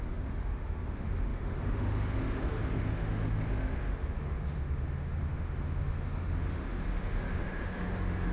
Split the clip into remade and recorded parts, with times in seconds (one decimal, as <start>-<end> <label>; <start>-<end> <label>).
0.0-8.3 remade